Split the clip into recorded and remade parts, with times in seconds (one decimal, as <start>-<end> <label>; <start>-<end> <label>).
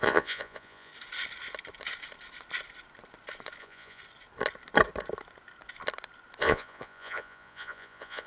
0.0-0.9 remade; 0.9-3.6 recorded; 3.6-4.0 remade; 4.0-6.4 recorded; 6.4-8.3 remade